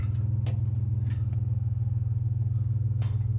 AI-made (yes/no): no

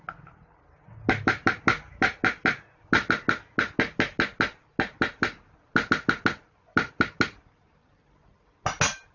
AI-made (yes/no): no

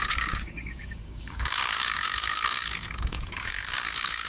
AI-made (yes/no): yes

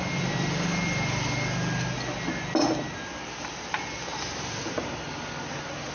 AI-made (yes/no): no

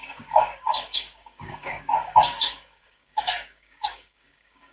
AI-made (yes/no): yes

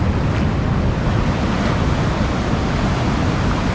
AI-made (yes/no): no